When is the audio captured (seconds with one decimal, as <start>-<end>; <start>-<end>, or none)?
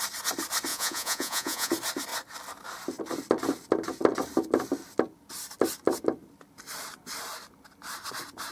0.0-0.7; 1.7-8.5